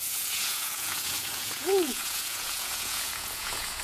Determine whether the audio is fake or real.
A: fake